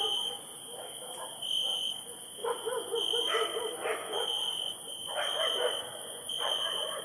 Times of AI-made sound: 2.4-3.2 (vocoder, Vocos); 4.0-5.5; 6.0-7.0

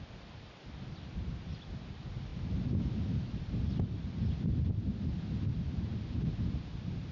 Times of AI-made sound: none